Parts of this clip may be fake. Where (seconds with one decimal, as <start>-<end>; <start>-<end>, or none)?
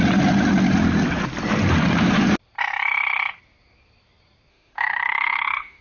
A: 4.5-5.8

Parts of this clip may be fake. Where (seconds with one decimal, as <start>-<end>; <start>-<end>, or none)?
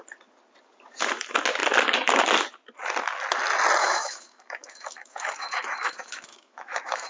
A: 3.8-7.1